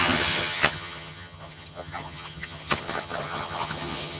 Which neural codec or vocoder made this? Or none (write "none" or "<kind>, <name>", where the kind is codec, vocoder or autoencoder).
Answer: vocoder, HiFi-GAN